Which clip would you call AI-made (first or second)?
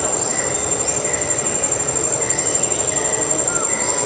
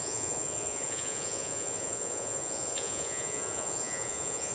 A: second